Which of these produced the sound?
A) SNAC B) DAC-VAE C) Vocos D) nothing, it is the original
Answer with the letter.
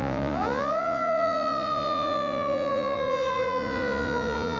C